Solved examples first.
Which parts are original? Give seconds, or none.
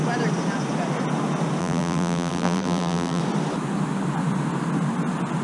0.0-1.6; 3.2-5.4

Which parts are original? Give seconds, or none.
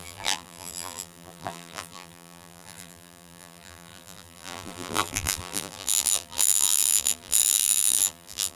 none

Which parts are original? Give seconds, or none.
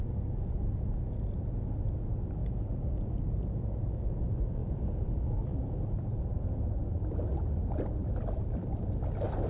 0.0-4.6; 5.1-5.5; 6.8-8.0; 8.9-9.5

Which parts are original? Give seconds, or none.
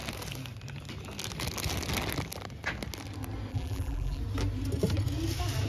0.0-3.5; 4.2-5.7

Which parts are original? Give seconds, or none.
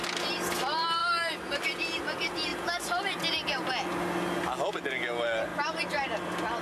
0.0-1.0; 2.0-6.6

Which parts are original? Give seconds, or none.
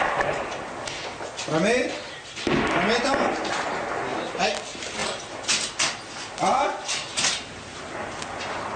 0.0-8.8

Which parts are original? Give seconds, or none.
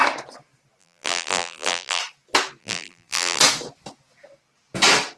0.0-0.8; 2.0-2.6; 3.4-5.2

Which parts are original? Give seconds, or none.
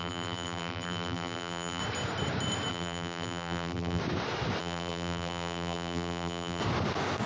1.8-2.7; 4.0-4.6; 6.6-7.3